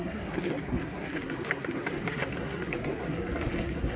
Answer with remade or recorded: remade